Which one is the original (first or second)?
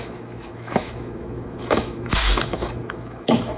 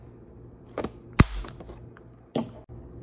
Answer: second